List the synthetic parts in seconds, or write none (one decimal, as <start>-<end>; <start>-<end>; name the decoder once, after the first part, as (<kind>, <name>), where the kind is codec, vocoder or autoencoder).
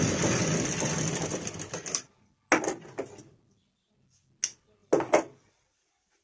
none